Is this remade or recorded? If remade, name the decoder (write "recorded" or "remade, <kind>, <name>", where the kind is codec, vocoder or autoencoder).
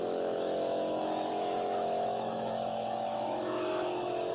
remade, autoencoder, DAC-VAE